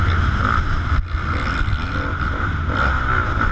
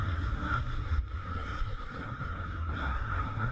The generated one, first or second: second